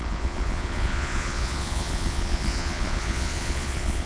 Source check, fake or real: fake